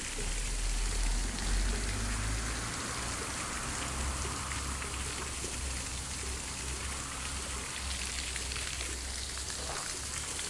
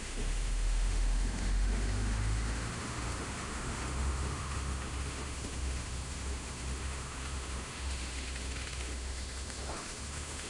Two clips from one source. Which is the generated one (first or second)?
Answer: second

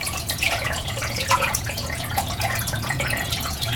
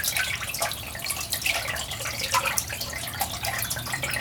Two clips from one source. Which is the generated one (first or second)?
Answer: first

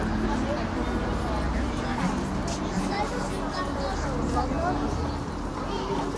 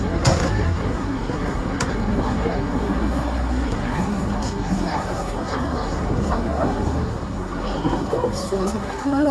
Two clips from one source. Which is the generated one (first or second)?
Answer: second